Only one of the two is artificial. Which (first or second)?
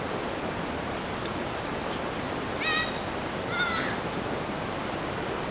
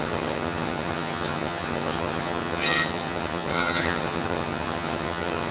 second